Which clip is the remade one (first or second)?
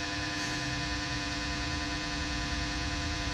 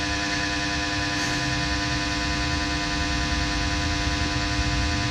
first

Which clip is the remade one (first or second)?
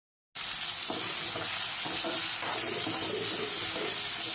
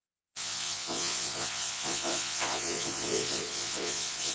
second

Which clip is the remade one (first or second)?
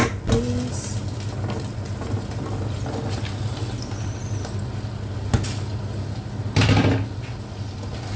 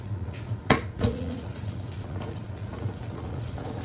second